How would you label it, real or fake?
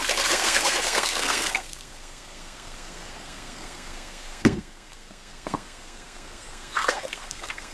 fake